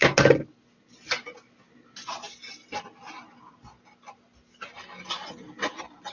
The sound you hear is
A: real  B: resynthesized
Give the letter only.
A